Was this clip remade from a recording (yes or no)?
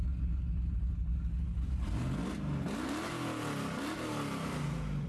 no